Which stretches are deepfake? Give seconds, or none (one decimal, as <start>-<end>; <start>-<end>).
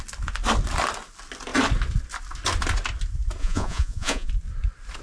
3.4-4.3